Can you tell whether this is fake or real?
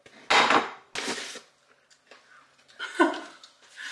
real